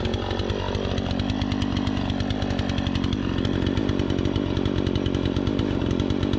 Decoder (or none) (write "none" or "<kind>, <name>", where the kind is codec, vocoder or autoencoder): none